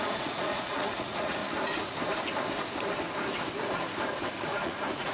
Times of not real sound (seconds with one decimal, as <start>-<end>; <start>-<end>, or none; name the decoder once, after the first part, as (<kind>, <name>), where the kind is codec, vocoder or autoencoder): 0.0-1.4 (vocoder, Vocos); 4.3-5.1